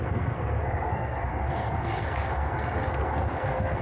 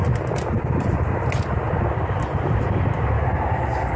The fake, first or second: first